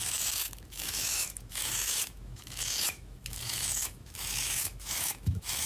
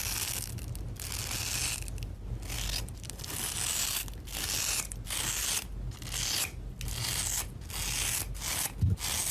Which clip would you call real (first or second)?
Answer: second